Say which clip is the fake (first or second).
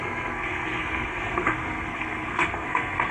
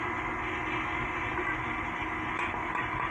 first